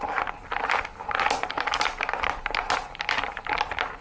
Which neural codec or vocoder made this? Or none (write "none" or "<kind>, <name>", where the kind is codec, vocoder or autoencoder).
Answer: none